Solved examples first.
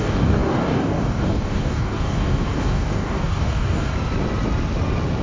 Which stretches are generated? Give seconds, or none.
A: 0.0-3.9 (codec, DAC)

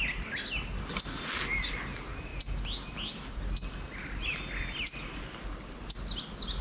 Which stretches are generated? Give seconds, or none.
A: none

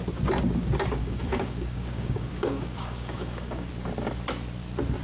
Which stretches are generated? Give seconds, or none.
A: 1.0-3.7 (codec, DAC)

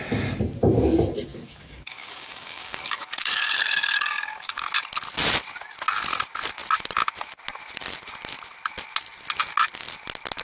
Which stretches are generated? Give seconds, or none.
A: 1.3-4.6 (codec, DAC)

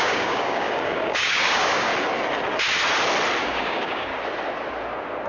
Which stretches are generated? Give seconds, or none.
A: 0.0-1.9 (codec, DAC); 3.4-4.1